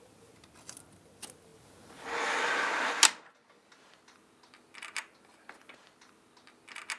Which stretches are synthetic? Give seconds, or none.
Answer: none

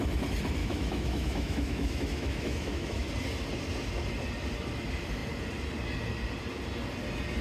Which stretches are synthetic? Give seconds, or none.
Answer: 0.6-3.1

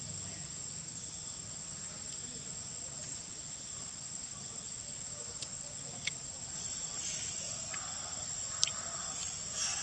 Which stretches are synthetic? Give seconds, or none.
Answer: none

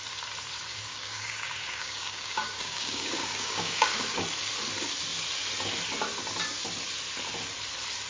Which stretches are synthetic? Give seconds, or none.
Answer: 0.7-4.2

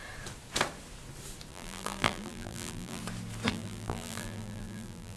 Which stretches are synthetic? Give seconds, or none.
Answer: 1.5-3.0; 3.5-5.2

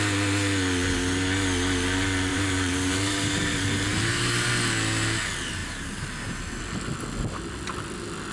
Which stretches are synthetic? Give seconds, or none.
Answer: 2.3-4.5; 5.6-6.6

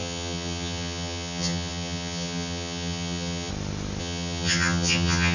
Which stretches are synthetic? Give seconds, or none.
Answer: 0.0-3.5; 4.0-5.3